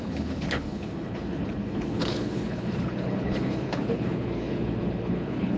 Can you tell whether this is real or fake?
fake